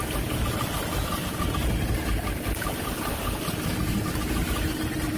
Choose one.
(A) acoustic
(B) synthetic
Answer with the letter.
A